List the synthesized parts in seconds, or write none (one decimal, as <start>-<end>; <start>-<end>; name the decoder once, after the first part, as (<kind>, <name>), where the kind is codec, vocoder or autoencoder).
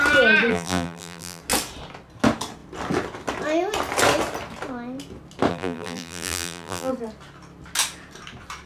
0.5-1.4 (vocoder, BigVGAN v2); 5.5-6.9